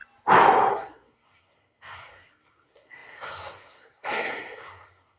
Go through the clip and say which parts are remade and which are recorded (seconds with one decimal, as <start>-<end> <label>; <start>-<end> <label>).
0.0-0.7 recorded; 0.7-5.2 remade